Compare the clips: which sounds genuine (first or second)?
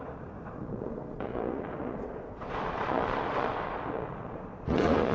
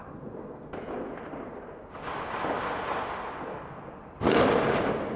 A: second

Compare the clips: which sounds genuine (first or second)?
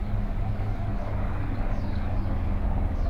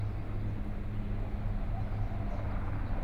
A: second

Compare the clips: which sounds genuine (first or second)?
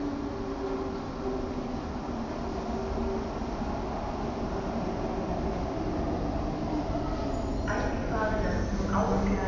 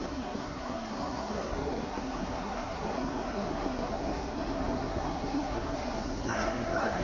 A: first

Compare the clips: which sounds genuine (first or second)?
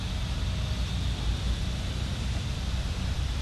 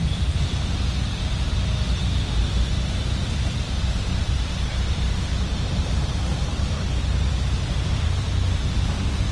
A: first